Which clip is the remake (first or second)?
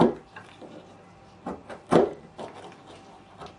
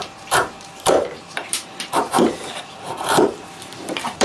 second